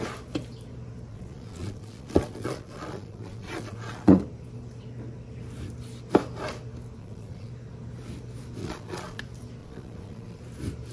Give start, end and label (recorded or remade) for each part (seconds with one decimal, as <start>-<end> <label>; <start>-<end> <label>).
0.0-1.1 recorded; 1.1-4.2 remade; 4.2-7.0 recorded; 7.0-7.5 remade; 7.5-8.6 recorded; 8.6-9.2 remade; 9.2-9.6 recorded; 9.6-10.4 remade; 10.4-10.9 recorded